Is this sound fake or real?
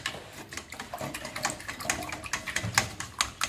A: real